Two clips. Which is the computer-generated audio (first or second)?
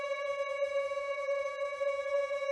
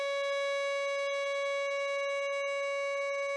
first